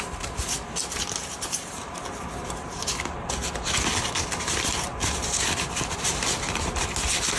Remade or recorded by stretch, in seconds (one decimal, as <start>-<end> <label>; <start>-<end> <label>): 0.0-0.8 recorded; 0.8-2.7 remade; 2.7-7.4 recorded